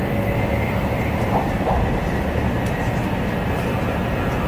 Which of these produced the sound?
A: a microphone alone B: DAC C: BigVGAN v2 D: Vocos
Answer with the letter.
A